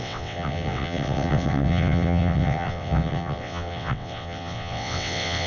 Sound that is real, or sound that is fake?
fake